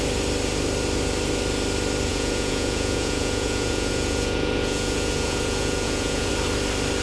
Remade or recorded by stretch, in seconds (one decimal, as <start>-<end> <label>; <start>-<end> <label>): 0.0-2.1 recorded; 2.1-6.3 remade; 6.3-7.0 recorded